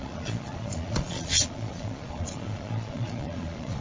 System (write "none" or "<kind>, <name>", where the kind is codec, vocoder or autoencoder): vocoder, Vocos